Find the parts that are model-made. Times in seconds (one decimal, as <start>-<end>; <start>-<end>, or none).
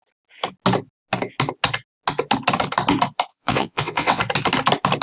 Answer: 3.3-4.2